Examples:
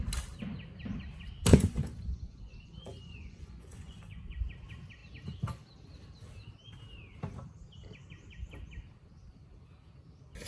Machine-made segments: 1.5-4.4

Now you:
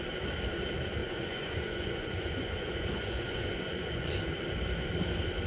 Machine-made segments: 1.0-4.2

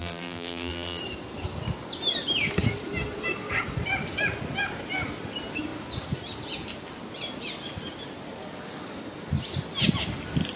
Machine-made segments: 0.0-1.0

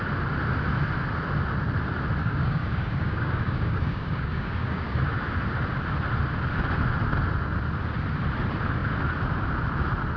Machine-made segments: 2.2-5.0

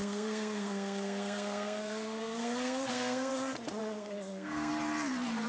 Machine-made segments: 0.0-3.3; 3.8-4.7

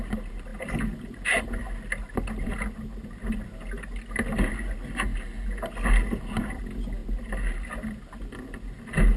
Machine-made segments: none

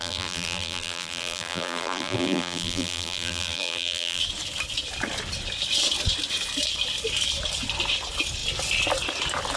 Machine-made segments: 0.0-4.2

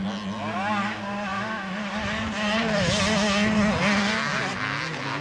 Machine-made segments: none